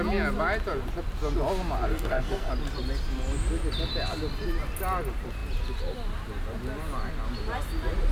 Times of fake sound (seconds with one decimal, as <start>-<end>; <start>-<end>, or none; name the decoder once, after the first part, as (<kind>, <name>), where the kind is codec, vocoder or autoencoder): 1.9-2.5 (codec, SNAC)